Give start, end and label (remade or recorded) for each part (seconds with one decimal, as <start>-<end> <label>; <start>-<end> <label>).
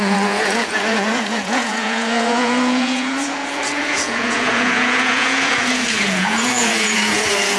0.0-7.6 remade